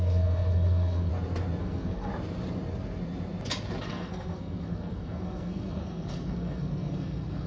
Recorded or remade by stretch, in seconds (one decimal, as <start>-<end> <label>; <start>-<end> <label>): 0.0-1.1 remade; 1.1-1.6 recorded; 1.6-2.1 remade; 2.1-3.8 recorded; 3.8-7.5 remade